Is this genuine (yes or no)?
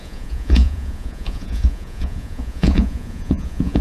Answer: no